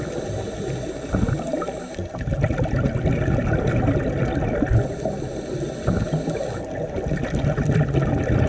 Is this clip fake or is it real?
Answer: real